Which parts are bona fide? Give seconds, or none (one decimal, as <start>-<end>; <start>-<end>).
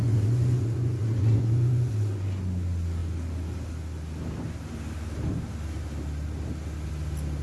1.9-7.4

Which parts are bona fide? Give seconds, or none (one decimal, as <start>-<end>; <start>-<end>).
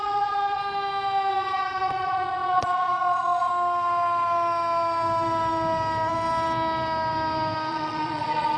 0.6-1.3; 3.5-7.7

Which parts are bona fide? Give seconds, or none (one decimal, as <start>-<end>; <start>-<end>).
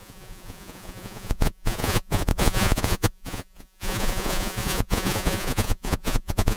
none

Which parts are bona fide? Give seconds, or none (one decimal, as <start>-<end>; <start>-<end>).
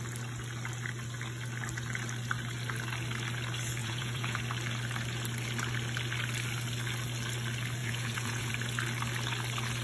0.0-3.8; 4.4-7.8; 8.5-9.8